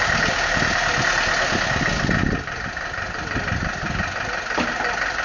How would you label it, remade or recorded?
recorded